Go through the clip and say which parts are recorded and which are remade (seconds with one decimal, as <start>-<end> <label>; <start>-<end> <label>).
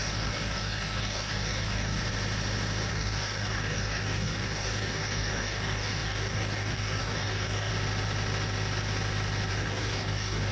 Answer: 0.0-2.0 remade; 2.0-2.9 recorded; 2.9-7.7 remade; 7.7-9.5 recorded; 9.5-10.5 remade